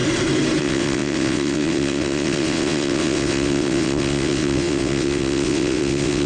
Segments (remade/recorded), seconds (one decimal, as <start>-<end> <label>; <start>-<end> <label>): 0.0-0.6 recorded; 0.6-6.3 remade